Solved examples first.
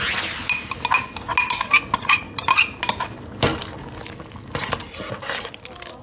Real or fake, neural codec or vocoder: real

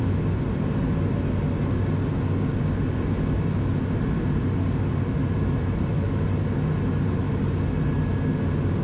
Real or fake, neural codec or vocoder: real